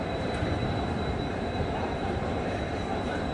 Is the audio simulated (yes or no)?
yes